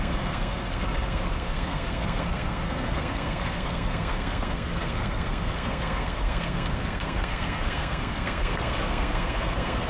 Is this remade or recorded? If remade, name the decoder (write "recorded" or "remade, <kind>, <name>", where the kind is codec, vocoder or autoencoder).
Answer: remade, codec, SNAC